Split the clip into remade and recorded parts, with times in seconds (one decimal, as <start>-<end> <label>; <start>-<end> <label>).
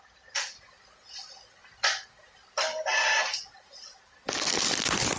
0.0-1.6 remade; 1.6-2.1 recorded; 2.1-2.9 remade; 2.9-3.4 recorded; 3.4-5.2 remade